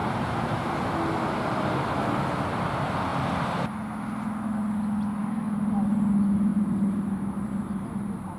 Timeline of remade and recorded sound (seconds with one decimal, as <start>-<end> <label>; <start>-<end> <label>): 0.0-0.7 remade; 0.7-6.5 recorded; 6.5-8.4 remade